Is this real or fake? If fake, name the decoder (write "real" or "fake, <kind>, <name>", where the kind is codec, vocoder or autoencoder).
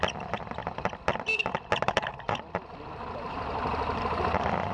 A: real